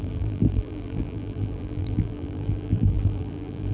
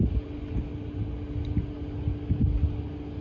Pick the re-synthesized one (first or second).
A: first